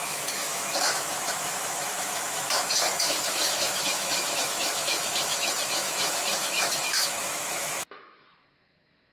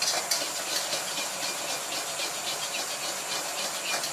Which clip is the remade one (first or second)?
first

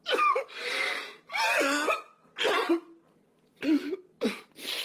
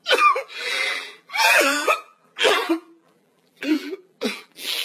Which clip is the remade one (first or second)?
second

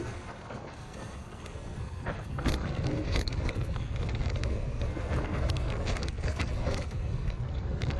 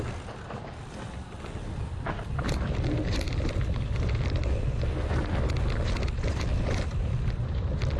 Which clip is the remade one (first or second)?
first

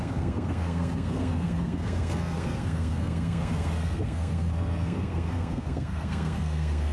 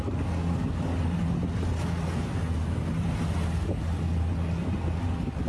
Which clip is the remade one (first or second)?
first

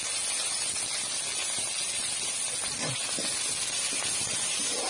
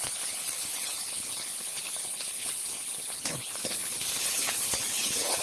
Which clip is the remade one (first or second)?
second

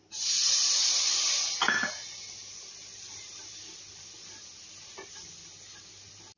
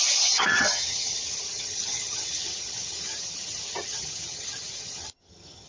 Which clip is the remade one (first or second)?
second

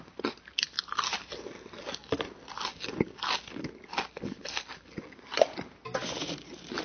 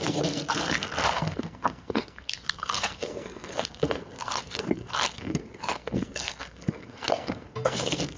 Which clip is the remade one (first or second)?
second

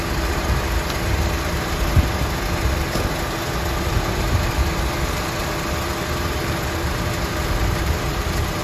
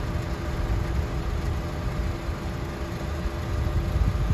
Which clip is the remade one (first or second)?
first